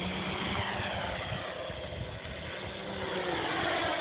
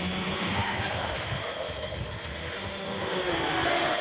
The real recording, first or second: first